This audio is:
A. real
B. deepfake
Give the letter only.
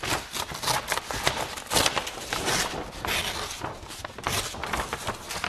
A